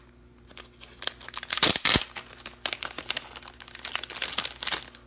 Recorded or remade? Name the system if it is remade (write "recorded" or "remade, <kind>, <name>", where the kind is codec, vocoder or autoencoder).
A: recorded